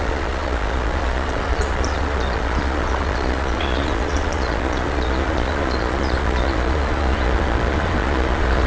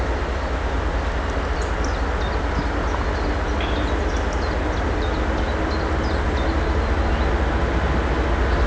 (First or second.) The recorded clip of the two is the second